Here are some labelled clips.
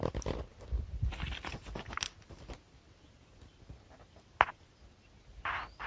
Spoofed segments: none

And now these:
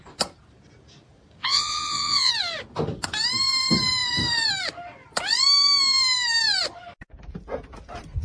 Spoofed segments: 1.4-2.3 (vocoder, Vocos)

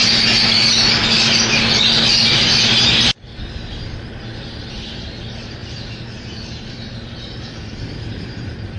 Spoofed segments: 2.8-3.3 (vocoder, BigVGAN v2); 4.6-8.8

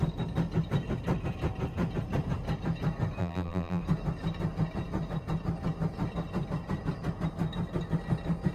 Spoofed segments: 3.2-3.8 (vocoder, BigVGAN v2)

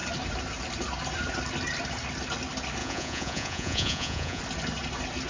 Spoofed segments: 2.8-4.4 (vocoder, Vocos)

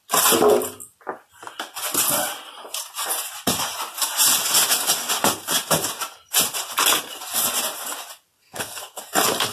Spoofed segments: 8.4-9.0 (codec, SNAC)